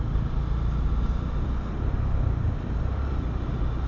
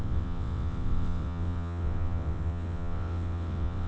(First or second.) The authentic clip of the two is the first